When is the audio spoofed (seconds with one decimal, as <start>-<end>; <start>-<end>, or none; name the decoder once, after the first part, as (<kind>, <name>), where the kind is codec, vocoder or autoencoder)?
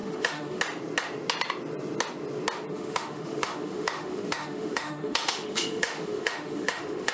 0.0-0.6 (autoencoder, DAC-VAE); 2.7-7.1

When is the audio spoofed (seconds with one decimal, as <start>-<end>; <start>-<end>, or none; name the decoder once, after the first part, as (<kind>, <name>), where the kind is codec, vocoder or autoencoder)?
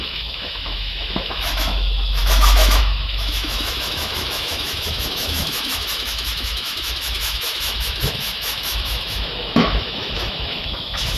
0.0-11.2 (autoencoder, DAC-VAE)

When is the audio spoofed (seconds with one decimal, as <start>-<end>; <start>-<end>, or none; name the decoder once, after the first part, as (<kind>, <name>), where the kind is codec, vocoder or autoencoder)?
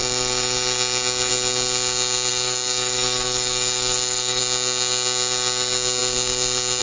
2.3-4.4 (autoencoder, DAC-VAE)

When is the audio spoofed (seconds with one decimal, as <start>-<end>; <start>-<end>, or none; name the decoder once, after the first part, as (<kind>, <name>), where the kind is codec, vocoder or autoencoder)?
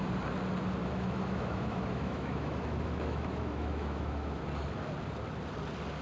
0.8-4.4 (autoencoder, DAC-VAE)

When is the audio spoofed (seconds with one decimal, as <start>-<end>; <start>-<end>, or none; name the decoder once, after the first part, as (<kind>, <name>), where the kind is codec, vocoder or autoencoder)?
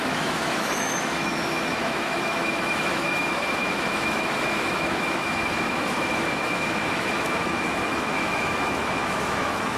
0.0-9.8 (autoencoder, DAC-VAE)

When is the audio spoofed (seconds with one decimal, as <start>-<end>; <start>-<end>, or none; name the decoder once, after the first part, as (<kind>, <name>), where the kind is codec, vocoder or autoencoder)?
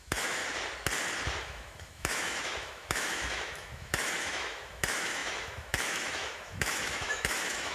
0.0-0.4 (autoencoder, DAC-VAE); 1.4-7.7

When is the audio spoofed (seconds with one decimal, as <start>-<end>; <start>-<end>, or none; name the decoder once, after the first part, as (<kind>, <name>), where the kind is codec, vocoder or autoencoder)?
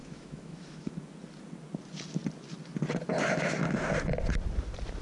0.0-0.9 (autoencoder, DAC-VAE)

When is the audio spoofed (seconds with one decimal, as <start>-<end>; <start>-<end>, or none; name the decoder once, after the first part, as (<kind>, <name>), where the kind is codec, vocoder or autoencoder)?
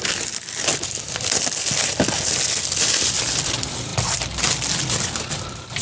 none